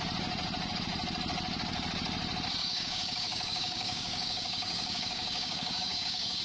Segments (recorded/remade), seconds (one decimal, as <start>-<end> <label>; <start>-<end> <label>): 0.0-2.6 recorded; 2.6-6.4 remade